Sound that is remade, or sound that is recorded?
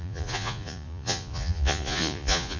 remade